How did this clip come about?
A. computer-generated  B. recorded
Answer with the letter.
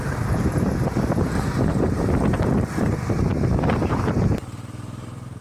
A